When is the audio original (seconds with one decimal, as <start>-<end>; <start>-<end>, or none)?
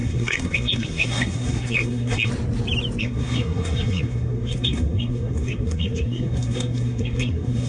2.3-3.0